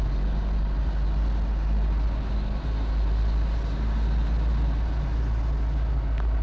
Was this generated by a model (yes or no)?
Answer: no